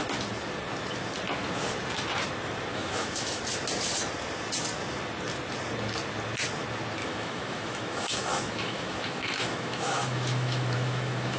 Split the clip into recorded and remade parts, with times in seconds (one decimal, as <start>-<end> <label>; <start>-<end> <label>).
0.0-2.7 recorded; 2.7-3.4 remade; 3.4-7.0 recorded; 7.0-11.4 remade